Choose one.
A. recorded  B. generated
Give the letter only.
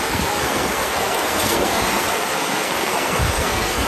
B